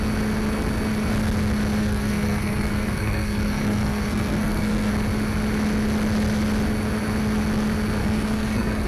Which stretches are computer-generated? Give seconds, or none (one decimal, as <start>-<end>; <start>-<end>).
1.8-4.9; 8.0-8.9